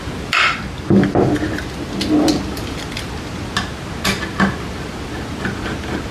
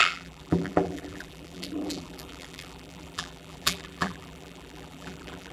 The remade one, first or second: second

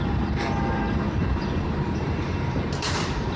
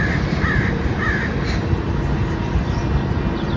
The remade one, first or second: first